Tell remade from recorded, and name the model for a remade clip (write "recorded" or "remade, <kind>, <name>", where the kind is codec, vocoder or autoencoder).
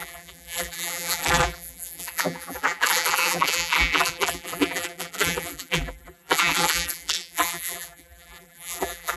remade, vocoder, BigVGAN v2